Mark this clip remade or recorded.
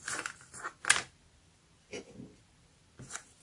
remade